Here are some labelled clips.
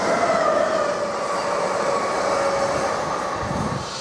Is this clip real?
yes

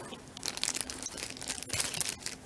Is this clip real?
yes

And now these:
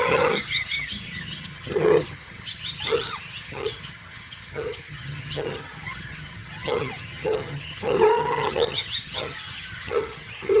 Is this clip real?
no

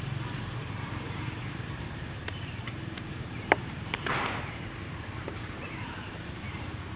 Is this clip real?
no